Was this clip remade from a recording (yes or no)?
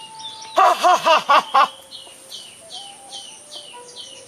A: no